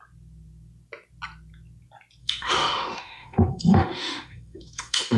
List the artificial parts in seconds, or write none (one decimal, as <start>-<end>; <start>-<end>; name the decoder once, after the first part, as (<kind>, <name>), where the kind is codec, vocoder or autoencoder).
2.2-5.2 (autoencoder, DAC-VAE)

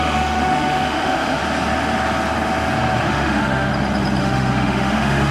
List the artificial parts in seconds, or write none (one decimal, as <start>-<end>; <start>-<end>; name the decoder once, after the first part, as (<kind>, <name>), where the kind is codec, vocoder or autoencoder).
0.0-1.4 (autoencoder, DAC-VAE); 3.1-3.7; 4.2-5.3

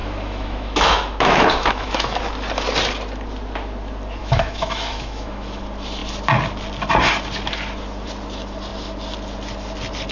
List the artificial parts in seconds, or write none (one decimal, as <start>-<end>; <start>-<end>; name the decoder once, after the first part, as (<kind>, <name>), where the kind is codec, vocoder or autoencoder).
0.0-2.2 (autoencoder, DAC-VAE); 4.2-5.6